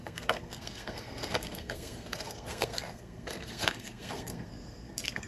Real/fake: fake